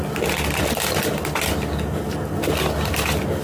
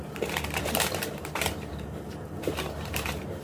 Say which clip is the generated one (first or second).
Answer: second